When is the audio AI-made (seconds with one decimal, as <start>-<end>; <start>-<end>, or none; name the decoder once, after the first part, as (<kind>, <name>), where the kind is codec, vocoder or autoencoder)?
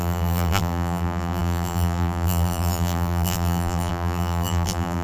0.0-5.0 (vocoder, BigVGAN v2)